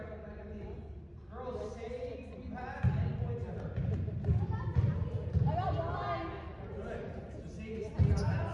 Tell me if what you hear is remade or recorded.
recorded